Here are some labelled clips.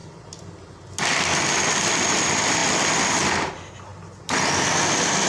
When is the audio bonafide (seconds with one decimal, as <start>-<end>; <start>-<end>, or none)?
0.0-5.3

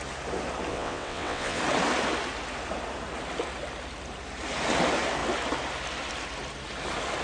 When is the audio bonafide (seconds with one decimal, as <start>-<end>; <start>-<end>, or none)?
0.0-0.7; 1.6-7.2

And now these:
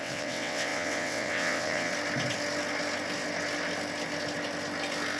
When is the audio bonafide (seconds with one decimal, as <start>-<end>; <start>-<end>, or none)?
1.9-5.2